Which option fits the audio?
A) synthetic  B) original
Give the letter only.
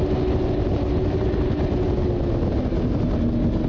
B